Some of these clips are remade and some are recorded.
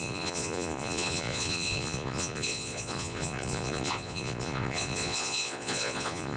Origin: remade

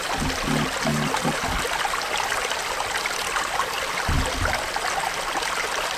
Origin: recorded